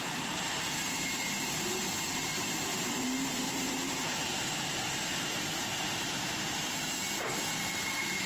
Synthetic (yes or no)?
yes